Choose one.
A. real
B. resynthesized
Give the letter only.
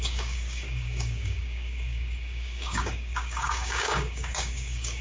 B